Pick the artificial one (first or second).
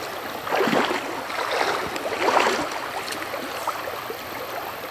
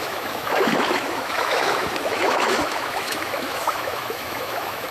second